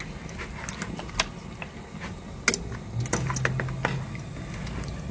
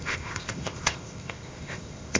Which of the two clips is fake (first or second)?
second